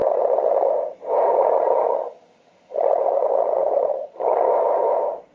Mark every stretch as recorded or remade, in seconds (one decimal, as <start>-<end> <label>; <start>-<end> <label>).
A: 0.0-0.7 remade; 0.7-1.3 recorded; 1.3-4.5 remade; 4.5-5.3 recorded